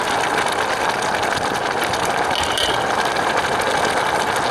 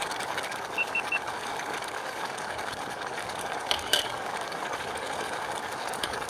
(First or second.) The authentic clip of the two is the first